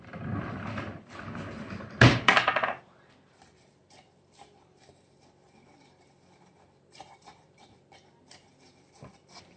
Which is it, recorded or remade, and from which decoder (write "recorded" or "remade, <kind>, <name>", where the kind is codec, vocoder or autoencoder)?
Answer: remade, vocoder, BigVGAN v2